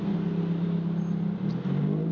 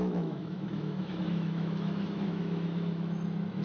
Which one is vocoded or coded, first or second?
second